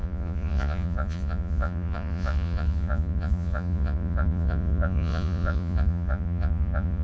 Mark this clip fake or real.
fake